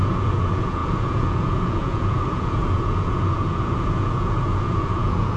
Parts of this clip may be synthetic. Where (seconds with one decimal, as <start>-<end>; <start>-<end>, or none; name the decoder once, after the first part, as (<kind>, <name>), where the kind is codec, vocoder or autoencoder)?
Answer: 0.0-5.4 (vocoder, Vocos)